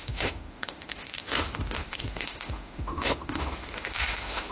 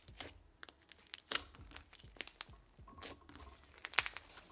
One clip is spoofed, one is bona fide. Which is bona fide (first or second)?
second